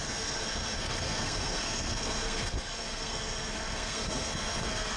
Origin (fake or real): fake